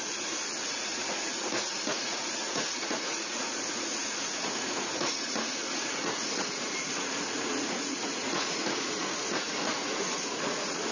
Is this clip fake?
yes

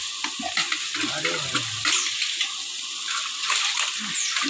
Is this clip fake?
no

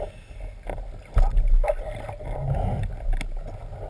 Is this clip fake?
no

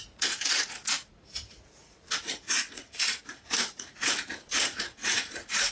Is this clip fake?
yes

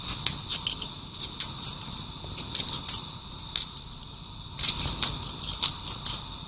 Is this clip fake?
no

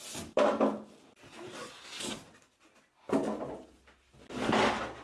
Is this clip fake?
no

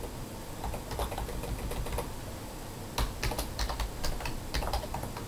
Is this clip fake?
no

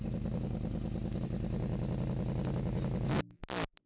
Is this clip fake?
no